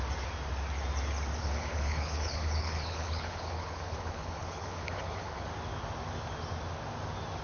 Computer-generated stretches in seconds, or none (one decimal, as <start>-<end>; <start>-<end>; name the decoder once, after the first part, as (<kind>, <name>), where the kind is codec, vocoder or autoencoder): 1.4-5.5 (codec, HILCodec)